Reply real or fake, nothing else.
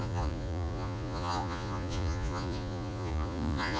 fake